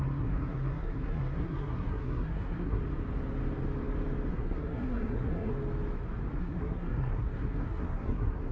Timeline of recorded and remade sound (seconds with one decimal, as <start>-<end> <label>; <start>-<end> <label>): 0.0-2.8 remade; 2.8-4.3 recorded; 4.3-5.5 remade; 5.5-6.4 recorded; 6.4-8.5 remade